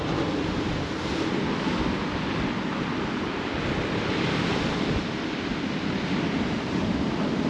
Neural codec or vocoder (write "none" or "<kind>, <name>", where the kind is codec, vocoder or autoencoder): none